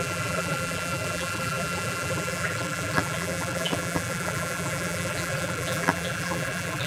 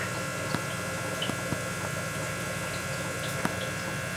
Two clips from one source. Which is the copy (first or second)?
first